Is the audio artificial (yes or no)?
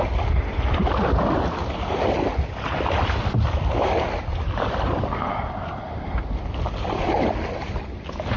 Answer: no